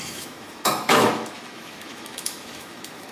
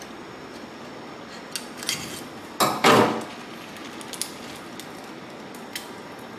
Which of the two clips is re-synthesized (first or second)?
first